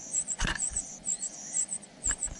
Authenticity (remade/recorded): remade